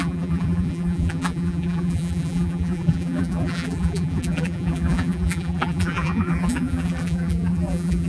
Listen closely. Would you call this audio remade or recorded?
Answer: remade